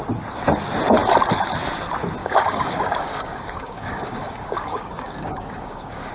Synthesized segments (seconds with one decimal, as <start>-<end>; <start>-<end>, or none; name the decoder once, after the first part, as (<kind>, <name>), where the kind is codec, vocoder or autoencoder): 2.2-6.1 (codec, DAC)